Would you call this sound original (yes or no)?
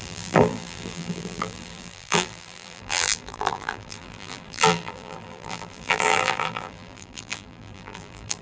no